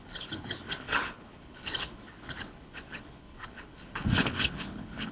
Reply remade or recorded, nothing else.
remade